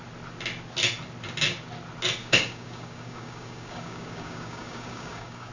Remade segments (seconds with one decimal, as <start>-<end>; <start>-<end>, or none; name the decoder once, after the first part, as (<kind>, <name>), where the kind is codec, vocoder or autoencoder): 2.2-5.5 (codec, DAC)